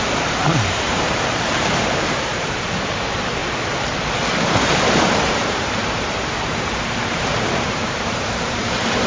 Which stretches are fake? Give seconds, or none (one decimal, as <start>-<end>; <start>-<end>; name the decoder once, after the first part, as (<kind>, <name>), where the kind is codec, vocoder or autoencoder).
0.0-3.4 (vocoder, BigVGAN v2); 5.0-9.1